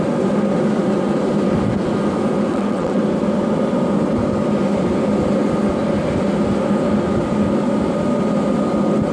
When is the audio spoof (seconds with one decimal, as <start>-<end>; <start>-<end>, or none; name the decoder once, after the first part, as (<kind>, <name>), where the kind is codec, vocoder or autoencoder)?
2.5-3.0 (vocoder, WaveNeXt)